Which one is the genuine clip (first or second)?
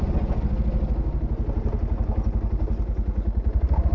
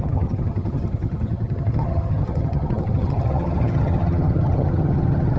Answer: first